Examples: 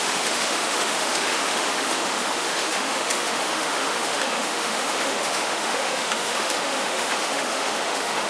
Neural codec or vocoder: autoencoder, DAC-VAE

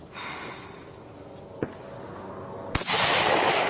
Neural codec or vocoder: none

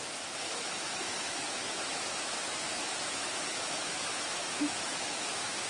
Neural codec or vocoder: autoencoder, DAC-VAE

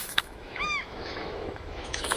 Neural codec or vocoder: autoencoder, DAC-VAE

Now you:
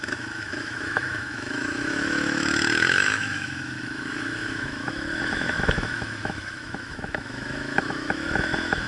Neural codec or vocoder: autoencoder, DAC-VAE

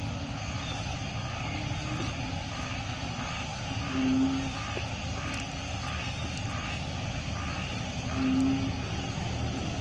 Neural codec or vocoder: none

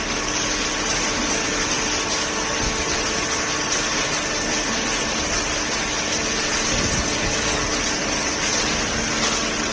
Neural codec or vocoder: none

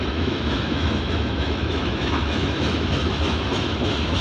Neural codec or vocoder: autoencoder, DAC-VAE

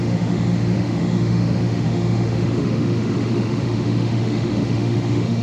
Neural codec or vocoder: autoencoder, DAC-VAE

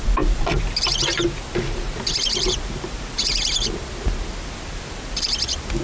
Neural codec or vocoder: none